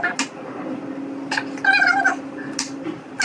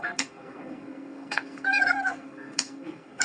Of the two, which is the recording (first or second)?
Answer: first